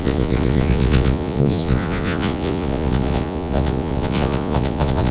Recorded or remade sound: remade